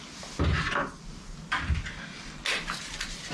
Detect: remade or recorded recorded